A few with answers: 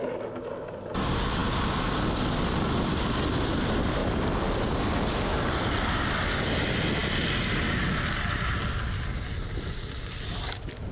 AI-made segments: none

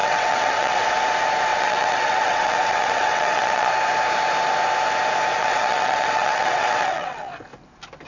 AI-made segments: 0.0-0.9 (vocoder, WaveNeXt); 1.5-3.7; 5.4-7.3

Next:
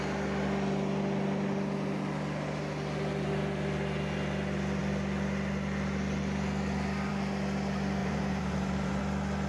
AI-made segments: 8.0-9.0 (vocoder, BigVGAN v2)

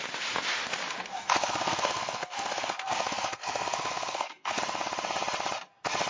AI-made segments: 1.1-4.6 (codec, SNAC)